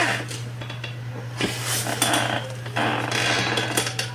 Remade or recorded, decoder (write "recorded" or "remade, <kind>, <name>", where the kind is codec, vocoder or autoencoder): recorded